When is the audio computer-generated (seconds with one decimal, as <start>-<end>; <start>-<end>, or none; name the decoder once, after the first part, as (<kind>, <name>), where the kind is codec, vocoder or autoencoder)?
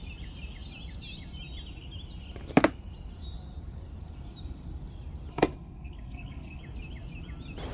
5.3-6.6 (codec, SNAC)